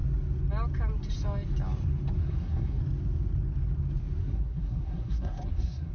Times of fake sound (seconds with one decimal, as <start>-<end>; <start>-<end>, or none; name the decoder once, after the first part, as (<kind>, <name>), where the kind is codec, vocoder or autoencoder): 2.2-2.8 (codec, SNAC); 4.2-5.9